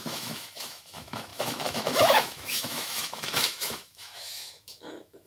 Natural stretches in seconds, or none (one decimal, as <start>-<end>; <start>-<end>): none